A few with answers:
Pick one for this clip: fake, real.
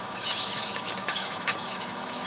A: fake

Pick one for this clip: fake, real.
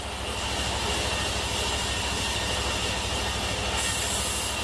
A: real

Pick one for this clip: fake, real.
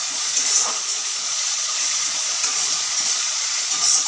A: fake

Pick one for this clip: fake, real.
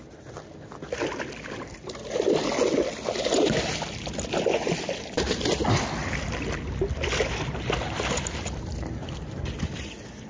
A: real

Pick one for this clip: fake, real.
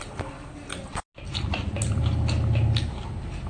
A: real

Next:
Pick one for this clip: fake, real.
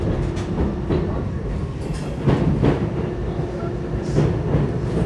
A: real